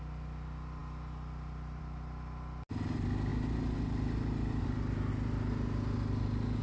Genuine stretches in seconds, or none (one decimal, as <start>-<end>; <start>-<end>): 0.0-6.6